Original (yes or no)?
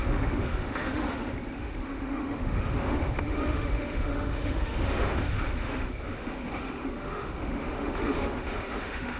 no